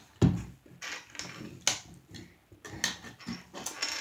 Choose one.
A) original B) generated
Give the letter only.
A